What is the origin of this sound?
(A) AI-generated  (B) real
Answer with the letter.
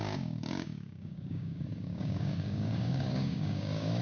A